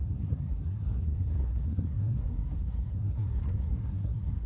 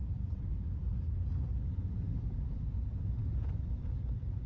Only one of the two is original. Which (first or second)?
second